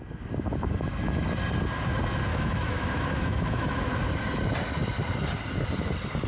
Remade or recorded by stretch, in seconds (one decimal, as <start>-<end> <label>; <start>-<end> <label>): 0.0-2.3 recorded; 2.3-3.8 remade; 3.8-6.3 recorded